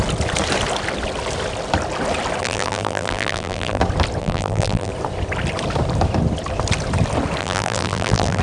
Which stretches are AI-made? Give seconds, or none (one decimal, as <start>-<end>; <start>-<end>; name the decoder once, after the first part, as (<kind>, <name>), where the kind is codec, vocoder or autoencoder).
2.4-3.8 (vocoder, BigVGAN v2); 4.2-4.9; 7.4-8.4